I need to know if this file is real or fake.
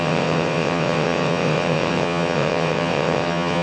fake